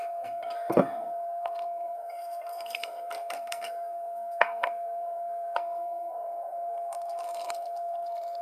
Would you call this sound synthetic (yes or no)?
yes